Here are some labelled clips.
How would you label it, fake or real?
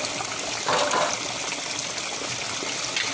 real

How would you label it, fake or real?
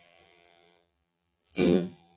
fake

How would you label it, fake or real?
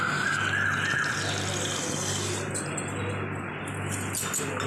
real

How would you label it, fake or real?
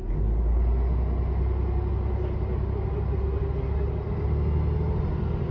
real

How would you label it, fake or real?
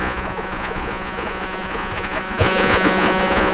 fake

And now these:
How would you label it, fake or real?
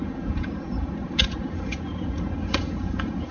fake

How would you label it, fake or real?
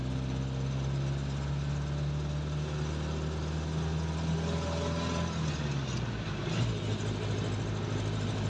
real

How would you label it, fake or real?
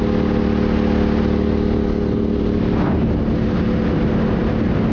real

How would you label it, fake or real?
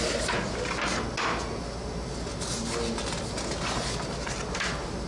real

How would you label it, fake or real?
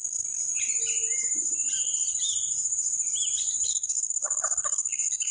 real